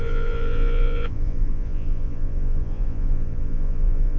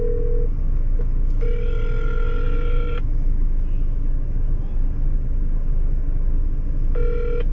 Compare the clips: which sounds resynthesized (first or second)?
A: first